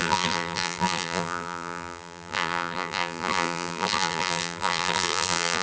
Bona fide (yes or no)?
no